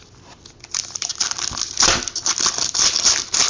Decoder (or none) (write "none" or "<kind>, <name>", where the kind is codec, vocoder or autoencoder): none